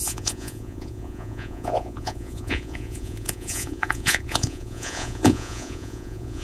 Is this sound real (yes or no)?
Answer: no